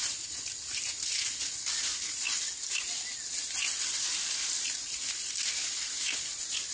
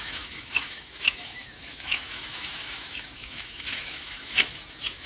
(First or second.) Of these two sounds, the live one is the first